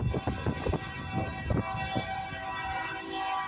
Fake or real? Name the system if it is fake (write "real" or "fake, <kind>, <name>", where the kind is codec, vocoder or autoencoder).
real